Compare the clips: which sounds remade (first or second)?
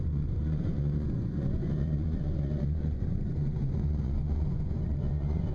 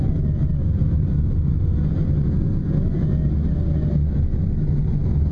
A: first